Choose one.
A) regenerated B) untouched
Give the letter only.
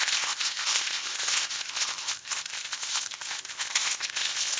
A